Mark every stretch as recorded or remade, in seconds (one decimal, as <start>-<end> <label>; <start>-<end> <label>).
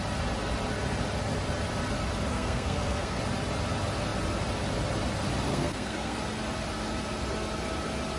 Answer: 0.0-2.3 recorded; 2.3-3.2 remade; 3.2-5.5 recorded; 5.5-6.2 remade; 6.2-8.2 recorded